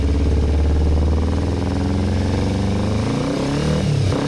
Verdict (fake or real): real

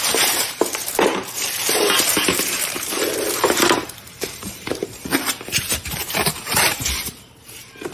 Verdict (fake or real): fake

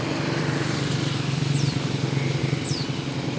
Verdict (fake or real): real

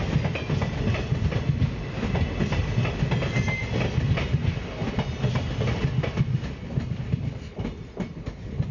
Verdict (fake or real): real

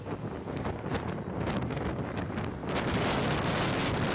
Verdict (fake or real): real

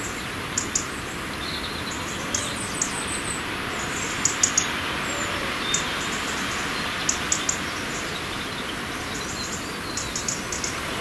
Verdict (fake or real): real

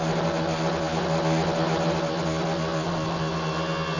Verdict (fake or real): real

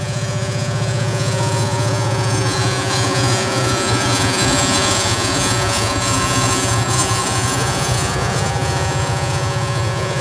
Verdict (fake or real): fake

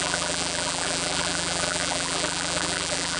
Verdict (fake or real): fake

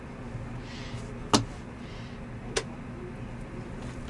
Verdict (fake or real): real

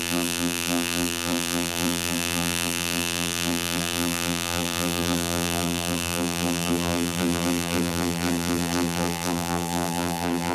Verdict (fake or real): fake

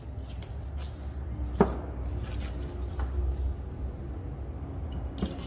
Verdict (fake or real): real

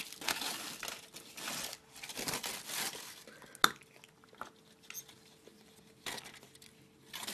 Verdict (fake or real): real